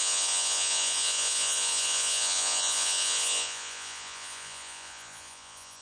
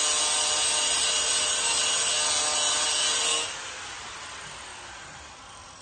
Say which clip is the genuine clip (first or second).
second